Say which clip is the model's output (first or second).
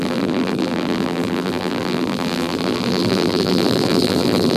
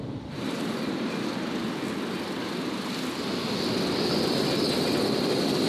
first